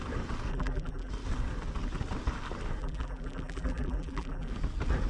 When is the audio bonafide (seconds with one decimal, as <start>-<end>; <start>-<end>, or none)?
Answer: 0.0-0.5; 1.1-2.8; 4.5-5.1